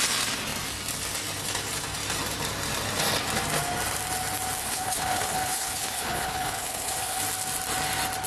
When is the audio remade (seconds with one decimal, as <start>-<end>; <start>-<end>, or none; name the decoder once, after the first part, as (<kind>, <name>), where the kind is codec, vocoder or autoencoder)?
4.6-7.2 (codec, HILCodec)

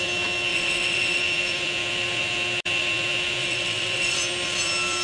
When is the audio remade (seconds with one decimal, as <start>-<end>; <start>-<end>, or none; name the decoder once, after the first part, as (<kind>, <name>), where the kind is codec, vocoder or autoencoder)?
0.5-1.2 (vocoder, WaveNeXt); 3.4-4.2

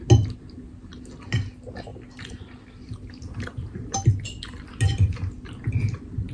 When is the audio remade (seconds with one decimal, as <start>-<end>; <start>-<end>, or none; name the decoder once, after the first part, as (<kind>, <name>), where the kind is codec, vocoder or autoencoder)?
none

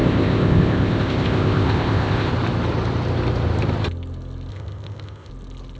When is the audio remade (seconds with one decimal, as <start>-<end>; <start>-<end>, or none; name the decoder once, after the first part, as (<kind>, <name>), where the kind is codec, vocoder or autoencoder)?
0.0-2.3 (codec, ZipCodec); 4.5-5.3

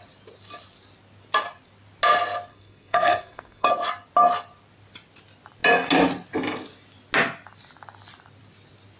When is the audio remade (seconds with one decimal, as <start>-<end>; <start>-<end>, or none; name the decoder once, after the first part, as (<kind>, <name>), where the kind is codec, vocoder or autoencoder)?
2.5-3.7 (codec, SNAC)

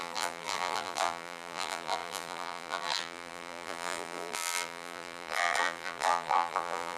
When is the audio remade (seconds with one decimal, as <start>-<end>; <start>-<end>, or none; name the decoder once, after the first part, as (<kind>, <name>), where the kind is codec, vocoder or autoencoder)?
0.0-7.0 (vocoder, BigVGAN v2)